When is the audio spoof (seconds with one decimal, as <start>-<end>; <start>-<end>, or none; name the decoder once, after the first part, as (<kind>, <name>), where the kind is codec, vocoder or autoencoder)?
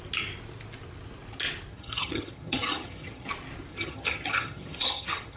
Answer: 1.7-3.3 (vocoder, HiFi-GAN); 3.7-5.4